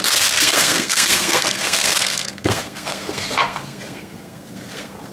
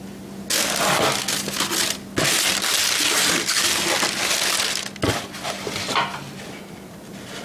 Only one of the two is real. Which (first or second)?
second